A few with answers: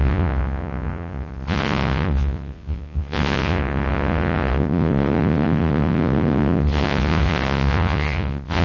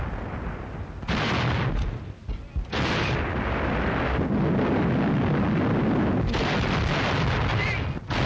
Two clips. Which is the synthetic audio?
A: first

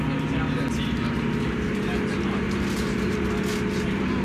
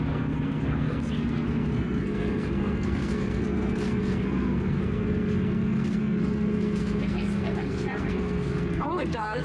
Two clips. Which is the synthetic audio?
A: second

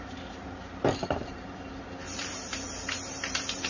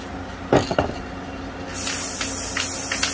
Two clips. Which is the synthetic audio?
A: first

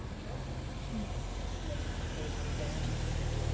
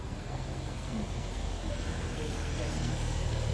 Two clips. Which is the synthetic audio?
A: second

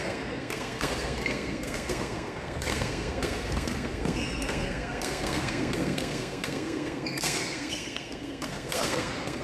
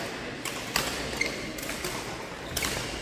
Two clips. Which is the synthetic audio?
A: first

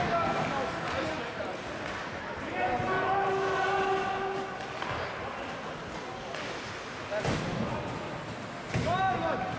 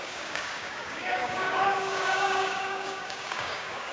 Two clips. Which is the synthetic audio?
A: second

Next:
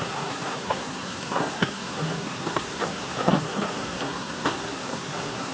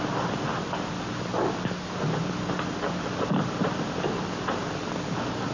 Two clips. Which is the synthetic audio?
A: first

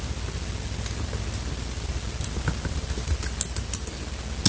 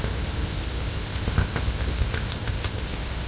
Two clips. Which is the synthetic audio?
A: second